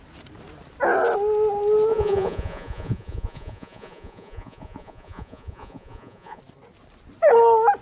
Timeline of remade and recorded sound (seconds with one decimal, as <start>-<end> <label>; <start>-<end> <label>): 0.0-1.9 recorded; 1.9-6.4 remade; 6.4-7.8 recorded